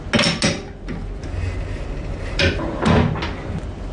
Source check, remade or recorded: recorded